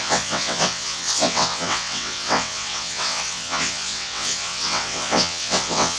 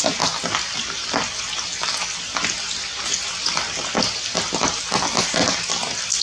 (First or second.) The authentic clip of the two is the second